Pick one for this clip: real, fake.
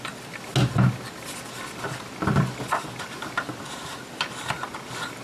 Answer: real